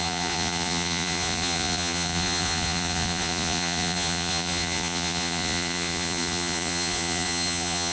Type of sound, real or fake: fake